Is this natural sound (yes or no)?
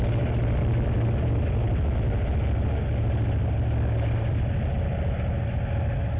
yes